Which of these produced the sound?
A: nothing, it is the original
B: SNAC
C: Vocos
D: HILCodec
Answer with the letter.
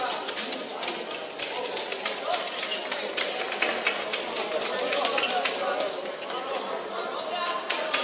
A